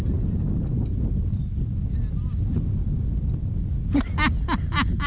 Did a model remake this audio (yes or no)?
no